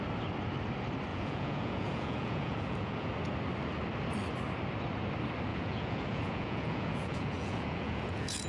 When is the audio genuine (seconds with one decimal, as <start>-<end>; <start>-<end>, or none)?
0.0-1.1; 3.1-5.5